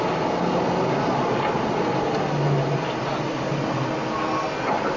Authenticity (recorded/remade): recorded